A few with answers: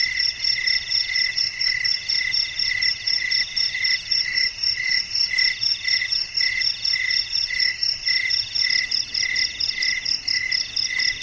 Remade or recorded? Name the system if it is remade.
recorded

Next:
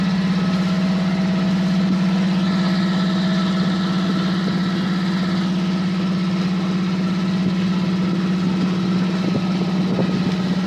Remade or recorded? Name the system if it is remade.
recorded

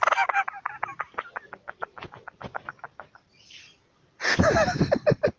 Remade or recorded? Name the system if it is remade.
recorded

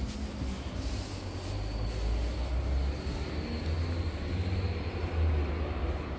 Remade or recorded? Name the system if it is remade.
recorded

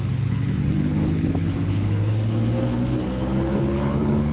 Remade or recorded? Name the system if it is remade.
remade, codec, HILCodec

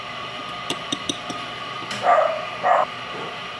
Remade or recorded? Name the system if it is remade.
remade, vocoder, BigVGAN v2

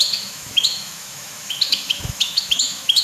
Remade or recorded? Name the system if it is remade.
remade, autoencoder, DAC-VAE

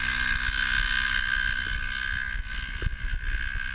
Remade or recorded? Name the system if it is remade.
recorded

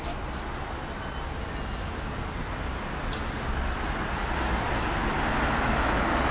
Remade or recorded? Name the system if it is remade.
recorded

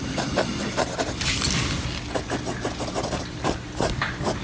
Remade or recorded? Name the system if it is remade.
recorded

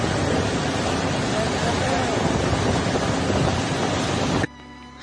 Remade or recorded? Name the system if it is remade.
recorded